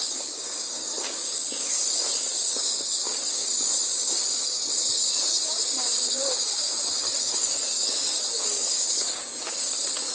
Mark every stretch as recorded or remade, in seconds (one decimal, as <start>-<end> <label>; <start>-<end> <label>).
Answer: 0.0-10.1 remade